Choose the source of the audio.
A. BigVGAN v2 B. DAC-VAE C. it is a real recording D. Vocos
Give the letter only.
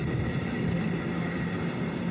C